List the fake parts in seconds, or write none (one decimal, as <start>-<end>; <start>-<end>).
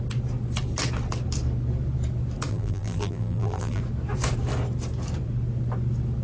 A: 2.5-3.8